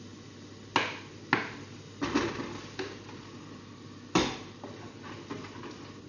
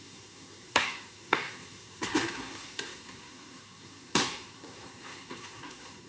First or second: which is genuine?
first